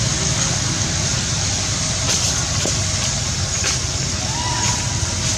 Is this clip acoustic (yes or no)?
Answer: yes